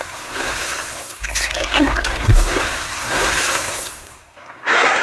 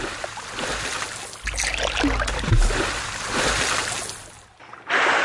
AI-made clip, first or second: first